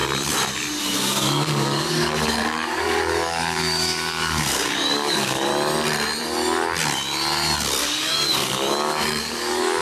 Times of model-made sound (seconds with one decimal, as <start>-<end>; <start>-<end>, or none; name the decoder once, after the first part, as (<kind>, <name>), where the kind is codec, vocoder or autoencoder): 0.8-5.5 (codec, DAC); 7.8-9.8